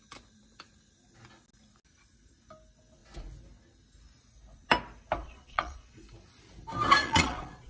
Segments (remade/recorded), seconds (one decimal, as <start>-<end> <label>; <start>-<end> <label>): 0.0-5.2 recorded; 5.2-6.0 remade; 6.0-7.0 recorded; 7.0-7.7 remade